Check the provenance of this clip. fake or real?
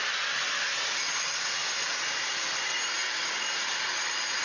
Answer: real